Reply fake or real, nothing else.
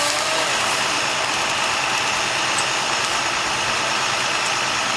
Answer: real